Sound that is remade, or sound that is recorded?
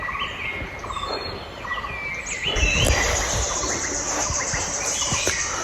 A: recorded